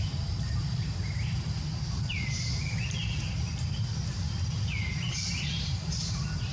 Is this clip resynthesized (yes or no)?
yes